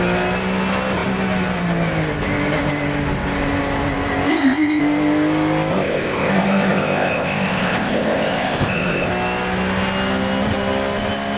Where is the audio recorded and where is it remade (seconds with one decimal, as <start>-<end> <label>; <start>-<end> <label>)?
0.0-4.3 recorded; 4.3-4.8 remade; 4.8-5.7 recorded; 5.7-9.1 remade; 9.1-11.4 recorded